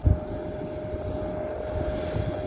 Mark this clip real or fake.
real